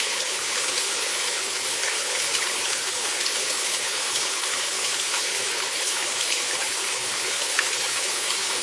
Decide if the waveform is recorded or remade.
remade